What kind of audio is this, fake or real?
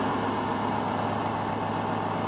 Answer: real